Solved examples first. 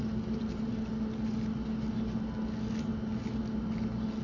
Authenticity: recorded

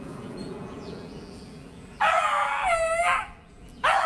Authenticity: remade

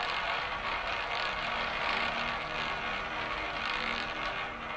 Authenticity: recorded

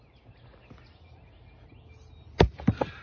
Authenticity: recorded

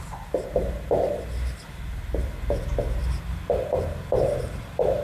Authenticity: remade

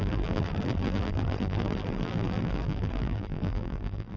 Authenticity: remade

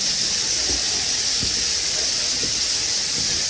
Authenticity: recorded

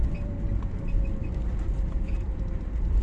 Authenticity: remade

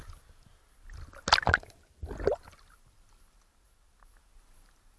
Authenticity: recorded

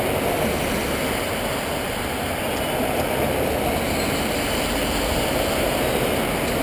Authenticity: recorded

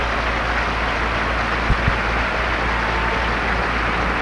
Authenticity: recorded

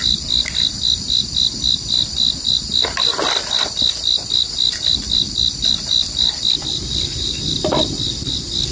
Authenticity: remade